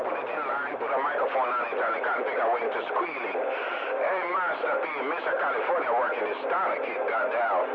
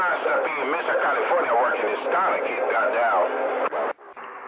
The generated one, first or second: first